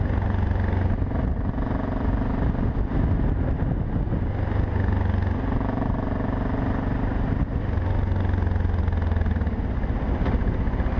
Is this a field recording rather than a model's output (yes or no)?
yes